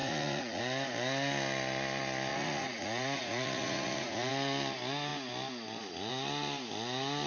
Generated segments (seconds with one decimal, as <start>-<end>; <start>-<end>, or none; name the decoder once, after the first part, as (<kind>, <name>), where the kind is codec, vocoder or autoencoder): 0.0-0.6 (vocoder, Vocos); 2.3-4.3